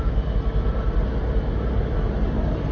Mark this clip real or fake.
real